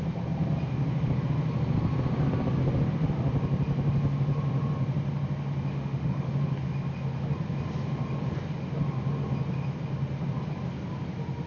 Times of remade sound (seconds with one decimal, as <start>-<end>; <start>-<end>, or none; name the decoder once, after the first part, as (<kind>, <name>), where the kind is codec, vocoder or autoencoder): 5.7-6.3 (autoencoder, DAC-VAE)